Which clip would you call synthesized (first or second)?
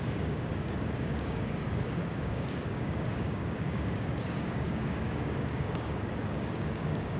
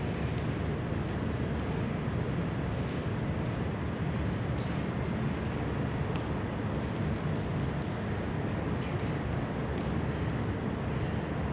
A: first